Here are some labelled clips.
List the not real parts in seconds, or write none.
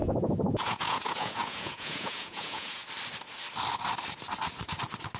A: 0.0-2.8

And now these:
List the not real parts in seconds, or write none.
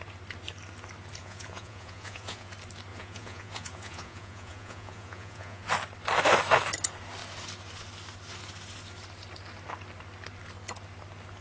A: 1.2-2.5; 2.9-5.7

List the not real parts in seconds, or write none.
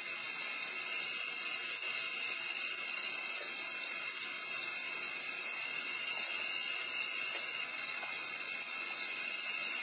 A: 7.5-9.8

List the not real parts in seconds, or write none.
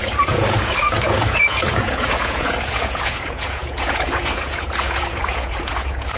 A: 0.0-6.2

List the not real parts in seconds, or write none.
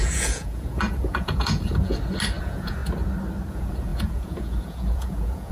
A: 0.0-1.9; 2.4-2.8; 3.5-5.5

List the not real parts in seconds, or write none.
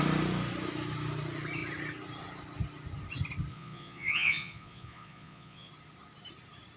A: 3.5-5.7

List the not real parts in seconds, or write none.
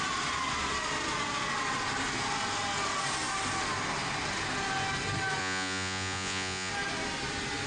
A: 5.4-6.7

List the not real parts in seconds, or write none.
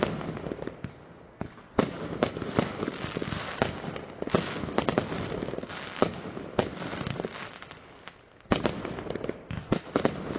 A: none